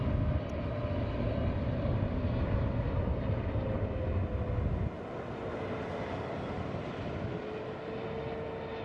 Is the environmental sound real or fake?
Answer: real